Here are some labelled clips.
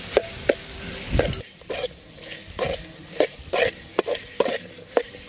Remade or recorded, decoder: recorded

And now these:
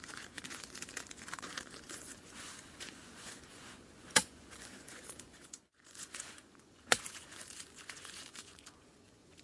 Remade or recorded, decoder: remade, vocoder, Vocos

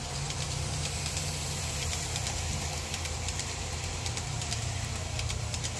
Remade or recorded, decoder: remade, vocoder, BigVGAN v2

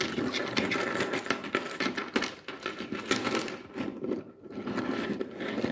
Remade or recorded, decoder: recorded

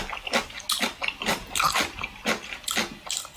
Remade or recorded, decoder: recorded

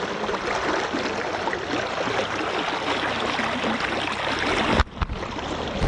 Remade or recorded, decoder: recorded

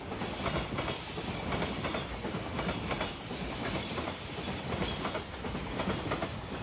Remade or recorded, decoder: remade, vocoder, BigVGAN v2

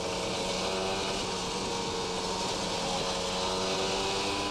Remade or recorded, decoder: recorded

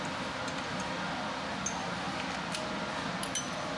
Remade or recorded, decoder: recorded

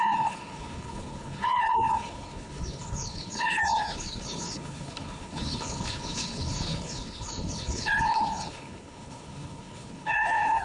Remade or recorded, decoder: remade, codec, HILCodec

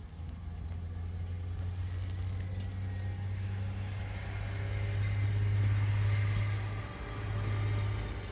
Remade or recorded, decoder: recorded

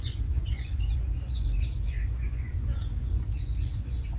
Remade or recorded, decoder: remade, vocoder, Vocos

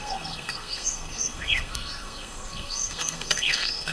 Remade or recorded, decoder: remade, codec, SNAC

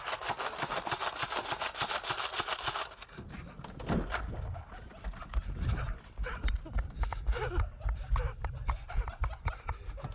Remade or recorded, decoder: recorded